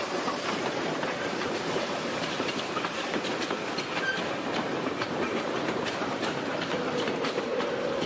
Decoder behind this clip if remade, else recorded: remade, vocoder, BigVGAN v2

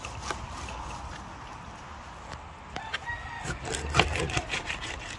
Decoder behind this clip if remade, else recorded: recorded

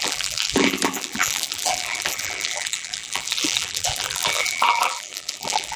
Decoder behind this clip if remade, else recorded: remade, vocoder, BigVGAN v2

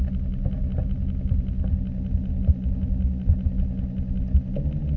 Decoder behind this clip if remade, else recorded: recorded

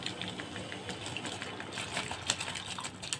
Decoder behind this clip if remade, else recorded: recorded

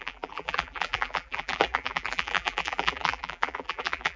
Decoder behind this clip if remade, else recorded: remade, vocoder, BigVGAN v2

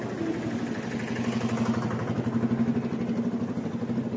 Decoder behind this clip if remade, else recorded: recorded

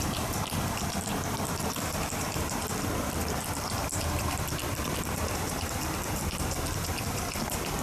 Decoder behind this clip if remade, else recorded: remade, vocoder, BigVGAN v2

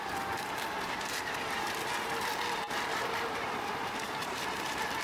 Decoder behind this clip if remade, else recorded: remade, vocoder, BigVGAN v2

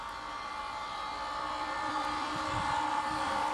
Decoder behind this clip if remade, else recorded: remade, vocoder, BigVGAN v2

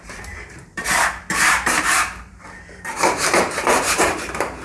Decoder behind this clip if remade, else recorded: remade, vocoder, BigVGAN v2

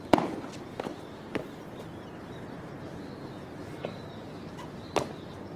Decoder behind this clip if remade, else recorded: recorded